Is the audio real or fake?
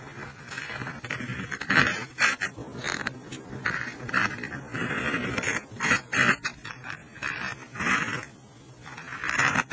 real